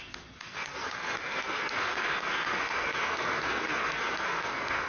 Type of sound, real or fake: fake